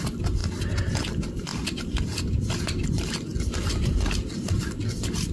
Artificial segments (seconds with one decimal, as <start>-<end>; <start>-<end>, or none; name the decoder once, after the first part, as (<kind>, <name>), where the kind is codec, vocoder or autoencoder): 0.0-0.4 (vocoder, BigVGAN v2); 1.1-3.3; 4.8-5.3